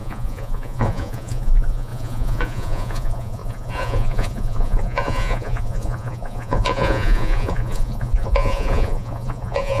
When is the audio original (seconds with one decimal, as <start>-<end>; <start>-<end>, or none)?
none